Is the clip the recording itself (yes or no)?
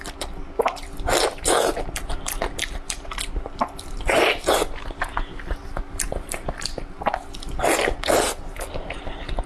yes